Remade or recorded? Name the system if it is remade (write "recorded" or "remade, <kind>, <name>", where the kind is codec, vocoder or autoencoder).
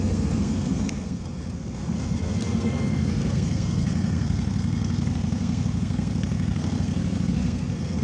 remade, codec, SNAC